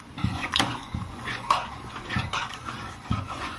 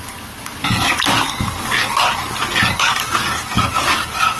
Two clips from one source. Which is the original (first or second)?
second